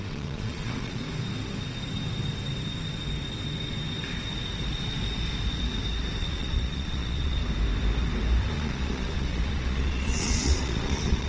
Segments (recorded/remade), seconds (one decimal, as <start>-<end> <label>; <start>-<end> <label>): 0.0-1.0 remade; 1.0-6.2 recorded; 6.2-7.4 remade; 7.4-8.5 recorded; 8.5-11.3 remade